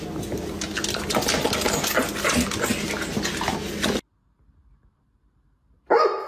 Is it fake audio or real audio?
real